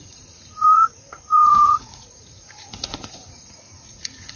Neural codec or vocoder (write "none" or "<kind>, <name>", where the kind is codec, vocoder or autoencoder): vocoder, Vocos